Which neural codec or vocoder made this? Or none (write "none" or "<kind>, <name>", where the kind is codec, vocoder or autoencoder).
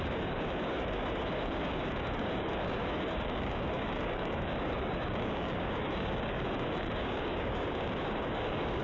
codec, DAC